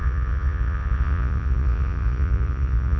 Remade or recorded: remade